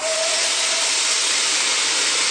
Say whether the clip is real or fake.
real